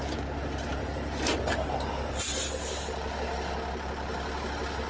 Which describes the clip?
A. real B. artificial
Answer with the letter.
A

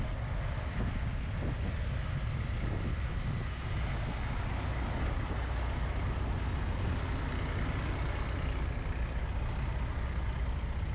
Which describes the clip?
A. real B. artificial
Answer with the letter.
A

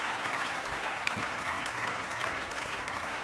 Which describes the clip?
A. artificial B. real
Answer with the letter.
A